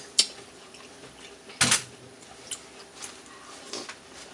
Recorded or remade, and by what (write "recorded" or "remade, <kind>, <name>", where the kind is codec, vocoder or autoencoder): recorded